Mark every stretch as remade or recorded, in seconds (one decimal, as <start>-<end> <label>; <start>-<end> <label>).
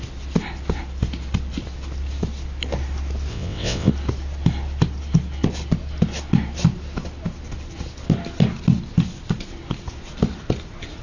0.0-3.3 recorded; 3.3-3.9 remade; 3.9-11.0 recorded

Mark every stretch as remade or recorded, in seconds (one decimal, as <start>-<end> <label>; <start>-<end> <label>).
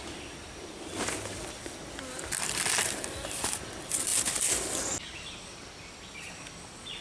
0.0-7.0 recorded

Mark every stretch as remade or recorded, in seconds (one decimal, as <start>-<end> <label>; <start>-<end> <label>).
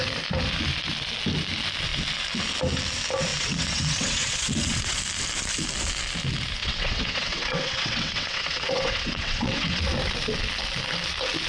0.0-3.3 recorded; 3.3-5.0 remade; 5.0-6.6 recorded; 6.6-9.8 remade; 9.8-11.5 recorded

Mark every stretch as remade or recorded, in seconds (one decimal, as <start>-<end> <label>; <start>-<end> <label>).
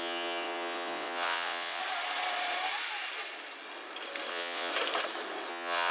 0.0-1.8 remade; 1.8-4.3 recorded; 4.3-4.7 remade; 4.7-5.5 recorded; 5.5-5.9 remade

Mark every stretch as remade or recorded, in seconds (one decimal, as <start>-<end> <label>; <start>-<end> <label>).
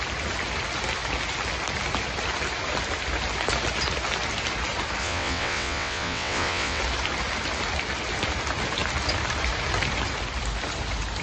0.0-5.0 recorded; 5.0-6.8 remade; 6.8-11.2 recorded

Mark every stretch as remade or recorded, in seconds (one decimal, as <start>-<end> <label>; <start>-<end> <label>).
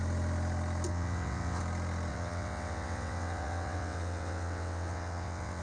0.0-0.9 recorded; 0.9-1.6 remade; 1.6-2.1 recorded; 2.1-5.6 remade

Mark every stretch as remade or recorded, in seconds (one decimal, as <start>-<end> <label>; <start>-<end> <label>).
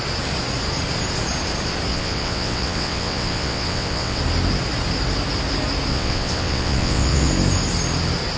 0.0-1.9 recorded; 1.9-4.2 remade; 4.2-5.9 recorded; 5.9-7.3 remade; 7.3-8.4 recorded